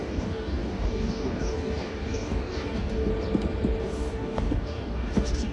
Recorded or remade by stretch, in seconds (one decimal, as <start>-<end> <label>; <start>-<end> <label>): 0.0-3.1 remade; 3.1-3.8 recorded; 3.8-5.5 remade